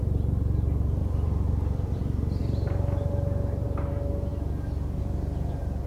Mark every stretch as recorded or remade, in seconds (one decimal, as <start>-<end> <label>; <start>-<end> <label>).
0.0-1.0 recorded; 1.0-2.0 remade; 2.0-2.4 recorded; 2.4-3.1 remade; 3.1-5.9 recorded